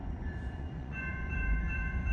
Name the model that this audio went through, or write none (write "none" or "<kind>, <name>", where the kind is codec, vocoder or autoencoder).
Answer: vocoder, Vocos